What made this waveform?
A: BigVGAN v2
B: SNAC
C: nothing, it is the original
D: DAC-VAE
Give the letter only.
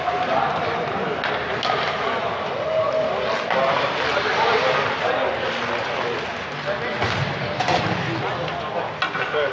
C